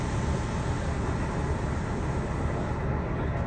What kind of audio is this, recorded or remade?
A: recorded